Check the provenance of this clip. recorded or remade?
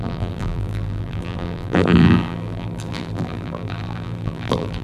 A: remade